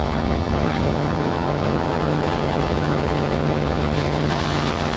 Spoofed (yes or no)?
yes